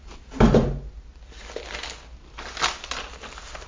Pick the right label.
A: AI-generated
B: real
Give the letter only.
B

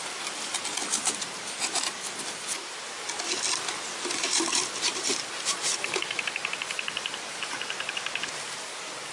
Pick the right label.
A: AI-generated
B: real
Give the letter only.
A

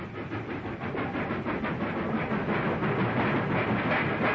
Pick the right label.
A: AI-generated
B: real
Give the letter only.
B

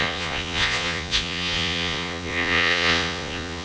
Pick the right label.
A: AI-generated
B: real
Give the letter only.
A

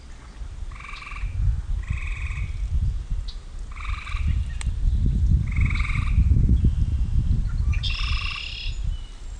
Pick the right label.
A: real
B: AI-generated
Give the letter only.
A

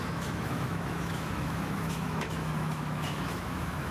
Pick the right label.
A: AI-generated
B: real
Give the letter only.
A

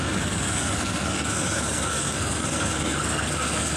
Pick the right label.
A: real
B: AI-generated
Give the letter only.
B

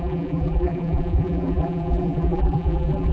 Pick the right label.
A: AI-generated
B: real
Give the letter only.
A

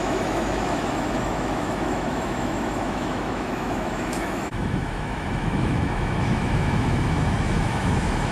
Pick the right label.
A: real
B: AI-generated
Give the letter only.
B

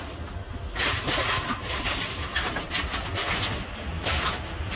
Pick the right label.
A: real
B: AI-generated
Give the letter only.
A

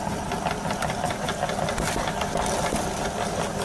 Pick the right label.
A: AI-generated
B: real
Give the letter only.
B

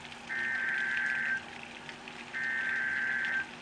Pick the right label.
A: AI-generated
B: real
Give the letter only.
B